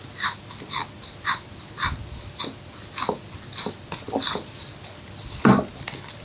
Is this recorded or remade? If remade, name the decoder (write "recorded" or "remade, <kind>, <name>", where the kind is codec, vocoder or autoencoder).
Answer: recorded